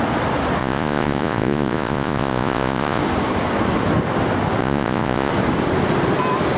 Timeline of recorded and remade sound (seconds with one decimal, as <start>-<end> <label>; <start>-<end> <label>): 0.0-0.6 recorded; 0.6-3.0 remade; 3.0-4.6 recorded; 4.6-5.3 remade; 5.3-6.6 recorded